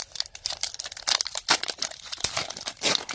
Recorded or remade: recorded